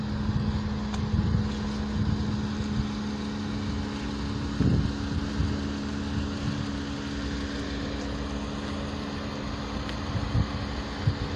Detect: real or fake real